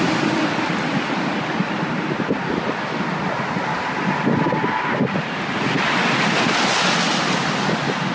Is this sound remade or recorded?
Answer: recorded